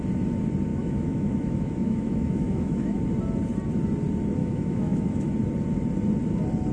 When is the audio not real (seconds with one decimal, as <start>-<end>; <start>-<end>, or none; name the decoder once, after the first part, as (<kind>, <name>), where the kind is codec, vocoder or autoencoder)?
0.7-3.0 (autoencoder, DAC-VAE); 4.4-5.3

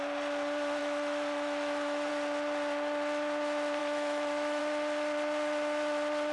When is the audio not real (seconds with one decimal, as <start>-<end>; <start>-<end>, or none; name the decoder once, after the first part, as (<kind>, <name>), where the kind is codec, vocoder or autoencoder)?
0.8-2.1 (autoencoder, DAC-VAE); 3.8-4.6

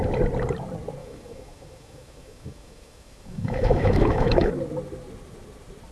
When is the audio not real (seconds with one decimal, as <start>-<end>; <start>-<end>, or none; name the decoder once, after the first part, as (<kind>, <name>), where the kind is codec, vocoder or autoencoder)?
1.0-4.5 (autoencoder, DAC-VAE)

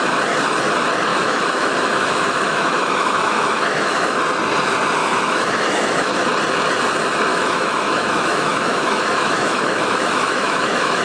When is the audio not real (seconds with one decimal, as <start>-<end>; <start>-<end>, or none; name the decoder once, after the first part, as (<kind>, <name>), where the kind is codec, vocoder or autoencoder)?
1.1-4.2 (autoencoder, DAC-VAE); 5.0-6.1; 7.3-11.0

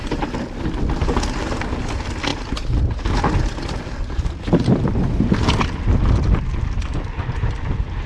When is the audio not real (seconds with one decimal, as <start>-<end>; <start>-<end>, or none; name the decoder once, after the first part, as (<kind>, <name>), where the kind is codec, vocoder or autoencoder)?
none

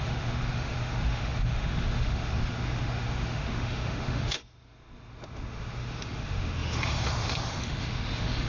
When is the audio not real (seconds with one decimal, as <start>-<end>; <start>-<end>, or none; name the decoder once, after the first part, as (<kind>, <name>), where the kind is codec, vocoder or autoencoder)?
0.0-8.5 (autoencoder, DAC-VAE)

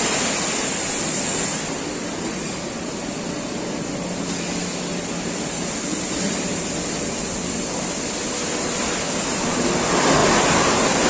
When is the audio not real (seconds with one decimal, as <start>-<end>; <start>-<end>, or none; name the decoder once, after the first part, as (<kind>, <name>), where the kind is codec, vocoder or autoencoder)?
none

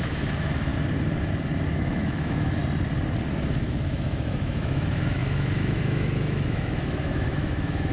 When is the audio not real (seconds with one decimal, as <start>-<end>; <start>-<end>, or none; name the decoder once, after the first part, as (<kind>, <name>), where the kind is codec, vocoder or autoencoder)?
0.0-0.7 (autoencoder, DAC-VAE); 1.7-2.6; 3.8-7.9